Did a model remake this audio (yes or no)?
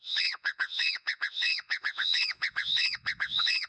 yes